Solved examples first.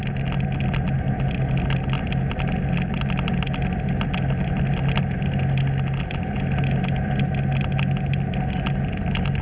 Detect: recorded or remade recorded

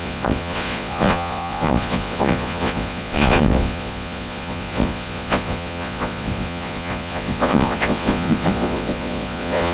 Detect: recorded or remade remade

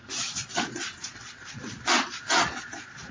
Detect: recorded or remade remade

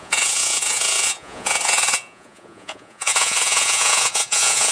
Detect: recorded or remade remade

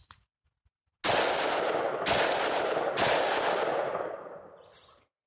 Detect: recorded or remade recorded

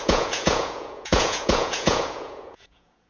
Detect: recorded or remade remade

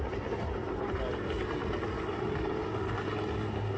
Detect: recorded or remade recorded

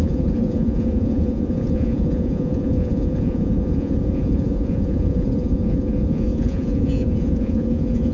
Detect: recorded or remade remade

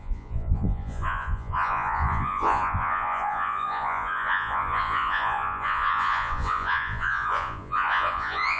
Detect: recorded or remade remade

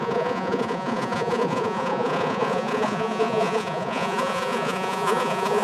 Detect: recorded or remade remade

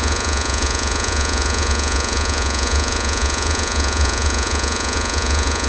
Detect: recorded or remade remade